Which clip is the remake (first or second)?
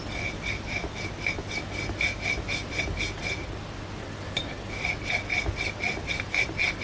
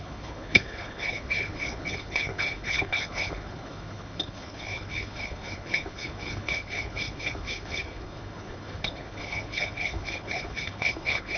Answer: second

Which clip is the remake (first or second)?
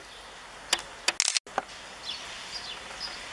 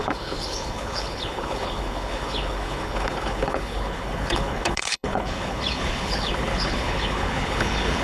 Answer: second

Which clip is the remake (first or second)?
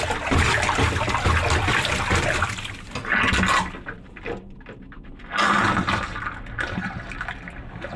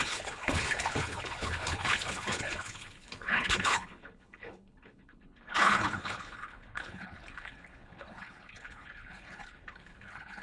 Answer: second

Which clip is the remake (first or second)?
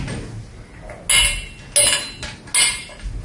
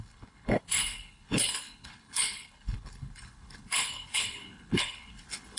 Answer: second